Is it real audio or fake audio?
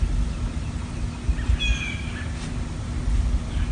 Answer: real